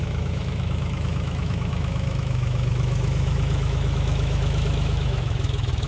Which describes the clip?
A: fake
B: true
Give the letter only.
A